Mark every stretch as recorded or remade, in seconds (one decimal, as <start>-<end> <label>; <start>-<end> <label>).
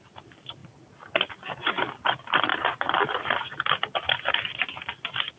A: 0.0-0.6 recorded; 0.6-1.3 remade; 1.3-2.5 recorded; 2.5-3.2 remade; 3.2-5.4 recorded